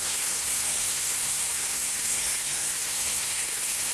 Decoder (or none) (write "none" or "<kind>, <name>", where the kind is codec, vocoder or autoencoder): codec, SNAC